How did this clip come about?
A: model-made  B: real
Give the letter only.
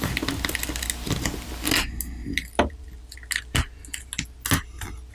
B